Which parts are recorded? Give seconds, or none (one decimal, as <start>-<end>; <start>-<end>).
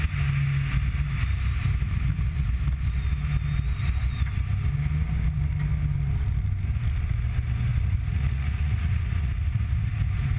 0.0-7.7; 10.0-10.4